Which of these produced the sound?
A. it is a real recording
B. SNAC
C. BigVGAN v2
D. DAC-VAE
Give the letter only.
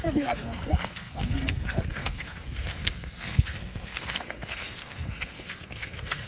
B